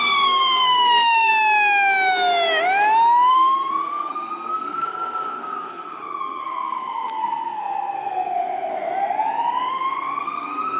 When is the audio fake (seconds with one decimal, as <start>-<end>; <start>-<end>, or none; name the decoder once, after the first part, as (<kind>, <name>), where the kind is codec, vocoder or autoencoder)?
0.0-1.3 (codec, SNAC); 3.3-8.7; 9.7-10.8

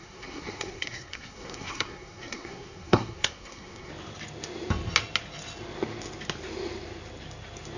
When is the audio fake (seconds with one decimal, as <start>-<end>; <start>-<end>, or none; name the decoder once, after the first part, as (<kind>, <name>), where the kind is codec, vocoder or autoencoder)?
0.0-3.9 (codec, SNAC)